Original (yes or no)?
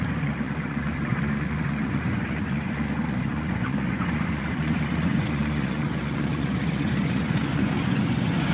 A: no